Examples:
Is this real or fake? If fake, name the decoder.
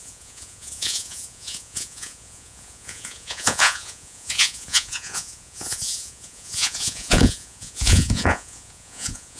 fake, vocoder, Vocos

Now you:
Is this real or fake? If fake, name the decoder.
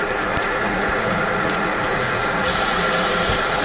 fake, vocoder, Vocos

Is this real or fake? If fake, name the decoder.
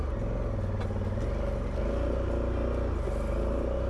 real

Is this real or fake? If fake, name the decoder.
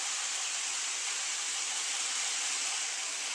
real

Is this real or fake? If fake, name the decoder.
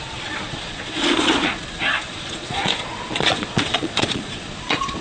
fake, vocoder, Vocos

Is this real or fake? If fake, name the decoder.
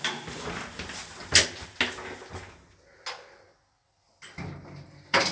real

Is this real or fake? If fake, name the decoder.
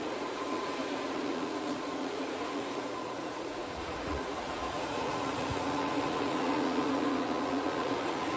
fake, vocoder, Vocos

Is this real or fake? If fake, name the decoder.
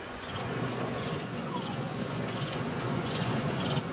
fake, vocoder, Vocos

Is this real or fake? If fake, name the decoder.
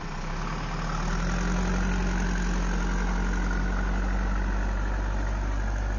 real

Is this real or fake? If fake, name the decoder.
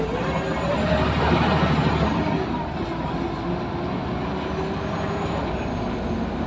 real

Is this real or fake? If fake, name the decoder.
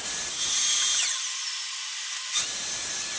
real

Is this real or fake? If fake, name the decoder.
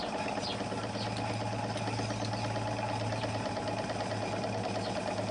real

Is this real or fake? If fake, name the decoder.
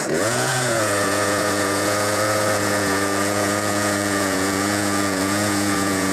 fake, vocoder, Vocos